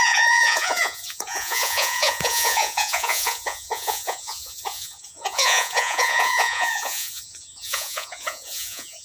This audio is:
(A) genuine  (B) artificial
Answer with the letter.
B